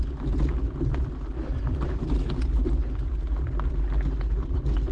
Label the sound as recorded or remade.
recorded